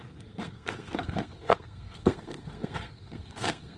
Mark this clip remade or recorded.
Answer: remade